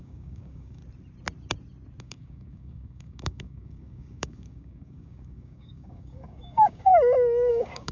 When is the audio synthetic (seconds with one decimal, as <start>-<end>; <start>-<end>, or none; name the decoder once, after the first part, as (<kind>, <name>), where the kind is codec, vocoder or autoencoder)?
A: 0.0-0.8 (codec, DAC); 2.0-6.9; 7.5-7.9